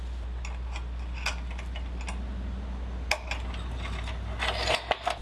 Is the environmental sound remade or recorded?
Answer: recorded